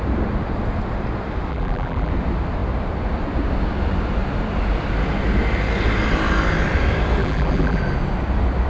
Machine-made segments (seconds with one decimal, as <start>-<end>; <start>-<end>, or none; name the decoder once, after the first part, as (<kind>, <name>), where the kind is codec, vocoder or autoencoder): 1.5-2.1 (vocoder, BigVGAN v2); 7.2-7.8